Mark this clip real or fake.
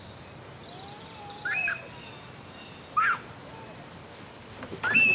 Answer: real